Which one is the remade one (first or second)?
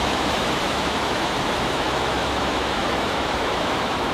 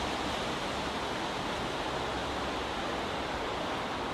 first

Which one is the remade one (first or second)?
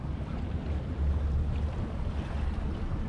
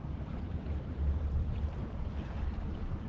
second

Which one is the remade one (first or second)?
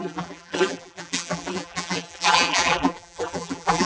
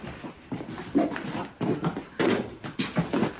first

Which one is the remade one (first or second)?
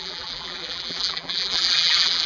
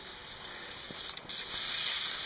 first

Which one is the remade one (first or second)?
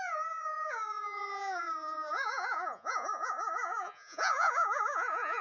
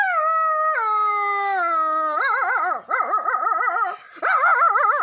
first